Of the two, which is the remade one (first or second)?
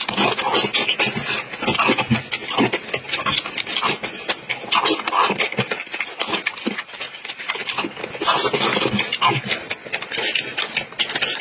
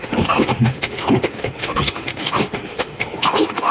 second